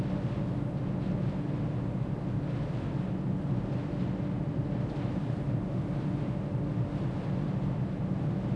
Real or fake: real